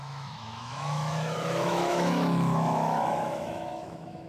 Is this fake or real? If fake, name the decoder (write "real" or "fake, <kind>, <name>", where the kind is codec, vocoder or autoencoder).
fake, autoencoder, DAC-VAE